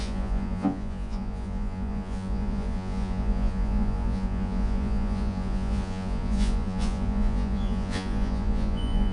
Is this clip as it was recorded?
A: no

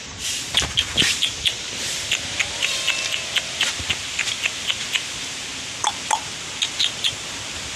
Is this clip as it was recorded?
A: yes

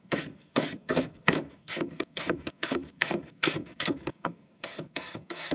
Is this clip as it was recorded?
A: no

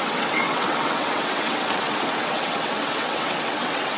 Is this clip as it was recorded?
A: no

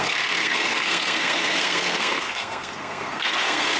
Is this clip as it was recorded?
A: no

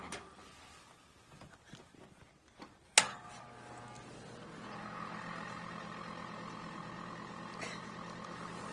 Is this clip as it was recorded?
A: yes